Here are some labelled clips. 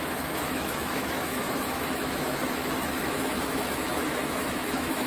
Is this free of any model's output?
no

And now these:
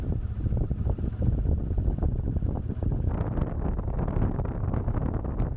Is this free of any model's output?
yes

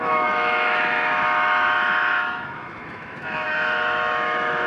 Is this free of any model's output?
no